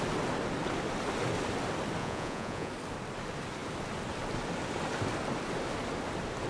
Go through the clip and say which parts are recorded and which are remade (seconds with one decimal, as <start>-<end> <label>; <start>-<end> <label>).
0.0-2.0 recorded; 2.0-2.7 remade; 2.7-6.5 recorded